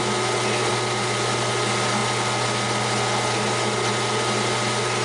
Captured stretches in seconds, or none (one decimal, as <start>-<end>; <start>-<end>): 0.0-5.0